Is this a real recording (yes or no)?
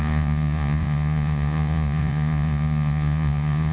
no